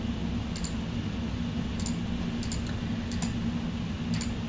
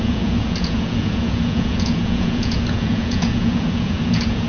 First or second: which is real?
first